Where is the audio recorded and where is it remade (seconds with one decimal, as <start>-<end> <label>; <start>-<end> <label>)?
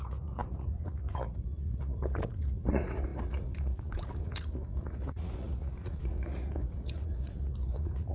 0.0-8.1 remade